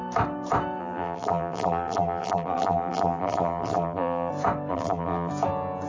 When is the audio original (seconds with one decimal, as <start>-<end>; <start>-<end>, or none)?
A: 0.0-0.8; 4.3-4.7; 5.3-5.9